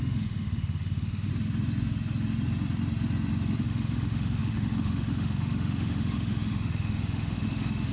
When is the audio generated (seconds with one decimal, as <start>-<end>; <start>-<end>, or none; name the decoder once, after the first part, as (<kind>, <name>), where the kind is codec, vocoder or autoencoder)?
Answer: 0.0-1.3 (autoencoder, DAC-VAE); 3.6-7.9